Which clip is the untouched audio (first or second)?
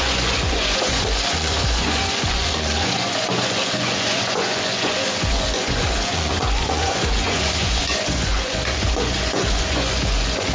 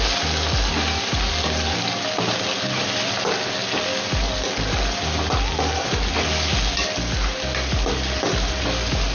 second